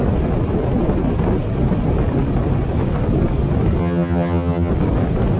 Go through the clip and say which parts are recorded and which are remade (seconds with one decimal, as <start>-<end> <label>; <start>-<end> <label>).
0.0-3.8 recorded; 3.8-4.7 remade; 4.7-5.4 recorded